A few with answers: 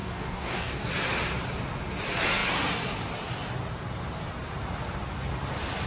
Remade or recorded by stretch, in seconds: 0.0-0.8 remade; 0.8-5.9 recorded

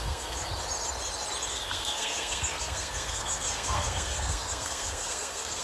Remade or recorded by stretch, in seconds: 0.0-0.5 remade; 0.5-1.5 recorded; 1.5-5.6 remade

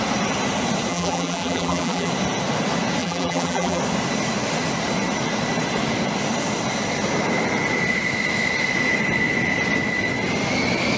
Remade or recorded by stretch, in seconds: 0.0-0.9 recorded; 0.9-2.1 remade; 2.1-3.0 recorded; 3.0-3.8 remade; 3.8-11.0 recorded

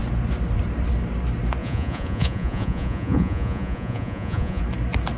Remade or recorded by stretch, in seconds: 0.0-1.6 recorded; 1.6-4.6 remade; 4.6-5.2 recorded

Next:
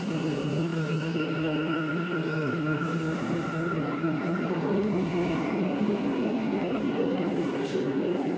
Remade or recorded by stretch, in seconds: 0.0-8.4 remade

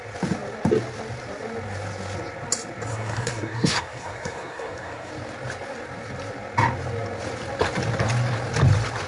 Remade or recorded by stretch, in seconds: 0.0-2.9 recorded; 2.9-5.1 remade; 5.1-9.1 recorded

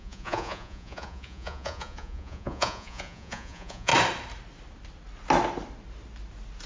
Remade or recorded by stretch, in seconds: 0.0-3.9 remade; 3.9-6.7 recorded

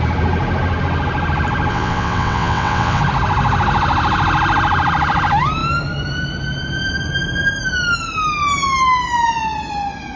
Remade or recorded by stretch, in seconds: 0.0-1.7 recorded; 1.7-3.0 remade; 3.0-10.2 recorded